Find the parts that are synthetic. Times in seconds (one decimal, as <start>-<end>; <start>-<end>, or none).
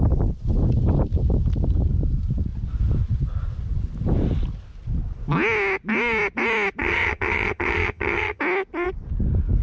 6.8-8.4